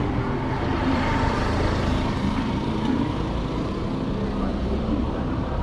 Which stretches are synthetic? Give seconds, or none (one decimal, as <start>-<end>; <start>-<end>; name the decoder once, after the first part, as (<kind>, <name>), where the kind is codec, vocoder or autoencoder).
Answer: 0.7-3.7 (vocoder, BigVGAN v2); 4.5-5.6